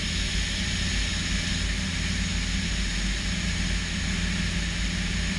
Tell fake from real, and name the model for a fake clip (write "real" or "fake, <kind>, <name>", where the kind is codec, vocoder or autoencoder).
real